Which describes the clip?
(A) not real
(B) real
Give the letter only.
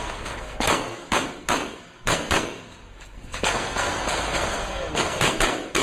A